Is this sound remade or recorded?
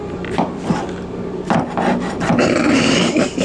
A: recorded